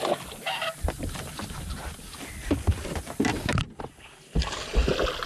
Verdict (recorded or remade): recorded